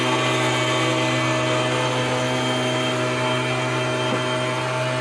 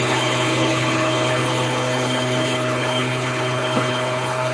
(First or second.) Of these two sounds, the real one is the first